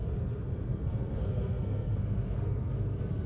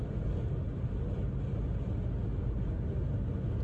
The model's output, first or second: first